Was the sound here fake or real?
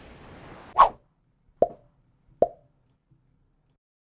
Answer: real